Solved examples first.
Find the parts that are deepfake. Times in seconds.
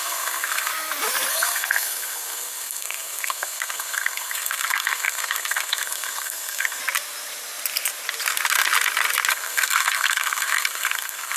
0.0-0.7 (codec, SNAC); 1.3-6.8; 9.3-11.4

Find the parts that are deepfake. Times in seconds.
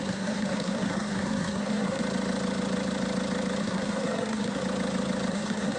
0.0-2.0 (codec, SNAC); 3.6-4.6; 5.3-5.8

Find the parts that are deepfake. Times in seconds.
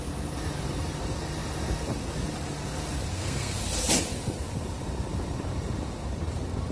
3.1-3.6 (codec, SNAC)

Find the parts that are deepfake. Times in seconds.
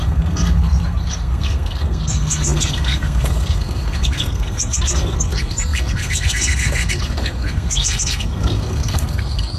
0.0-9.6 (codec, SNAC)